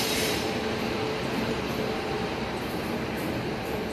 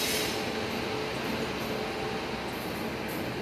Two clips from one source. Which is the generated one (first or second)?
first